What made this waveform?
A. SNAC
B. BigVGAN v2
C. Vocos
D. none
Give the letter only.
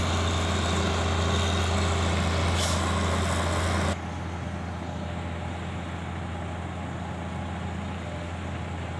D